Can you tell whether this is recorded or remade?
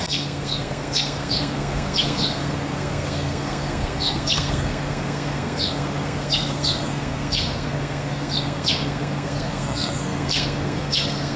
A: remade